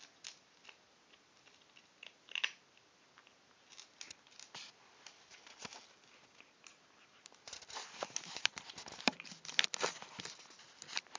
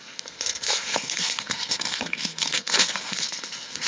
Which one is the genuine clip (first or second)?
first